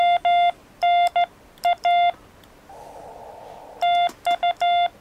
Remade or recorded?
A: recorded